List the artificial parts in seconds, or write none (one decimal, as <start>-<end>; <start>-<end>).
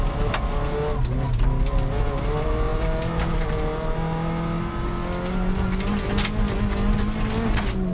none